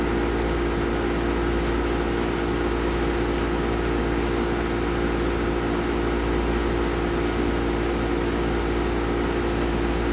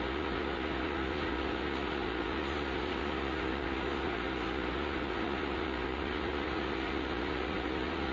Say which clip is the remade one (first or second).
second